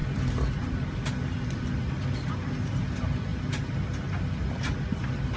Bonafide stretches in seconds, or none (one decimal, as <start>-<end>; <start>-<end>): 0.0-5.4